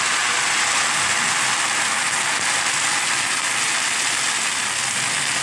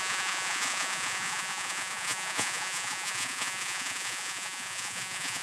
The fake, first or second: second